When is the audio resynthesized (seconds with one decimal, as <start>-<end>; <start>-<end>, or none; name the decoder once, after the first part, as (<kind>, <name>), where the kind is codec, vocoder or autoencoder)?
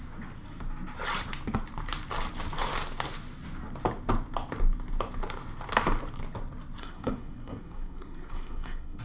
6.8-9.0 (codec, SNAC)